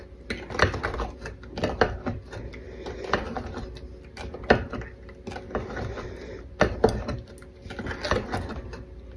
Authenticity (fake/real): real